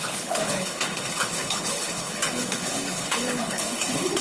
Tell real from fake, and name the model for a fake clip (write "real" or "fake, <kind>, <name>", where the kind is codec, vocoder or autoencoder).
fake, codec, HILCodec